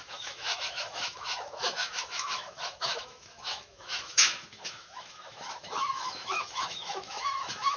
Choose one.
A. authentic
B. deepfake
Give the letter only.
B